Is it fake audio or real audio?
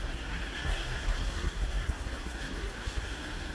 fake